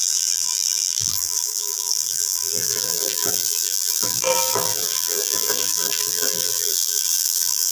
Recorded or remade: remade